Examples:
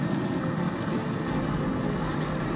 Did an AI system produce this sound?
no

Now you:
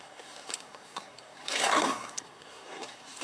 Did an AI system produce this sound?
yes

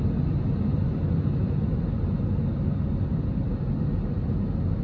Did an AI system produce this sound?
no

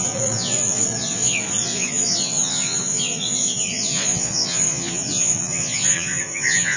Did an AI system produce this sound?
yes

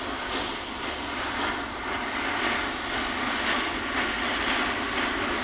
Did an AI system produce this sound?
no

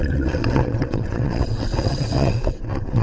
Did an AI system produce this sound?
yes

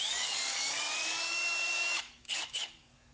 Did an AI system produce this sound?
yes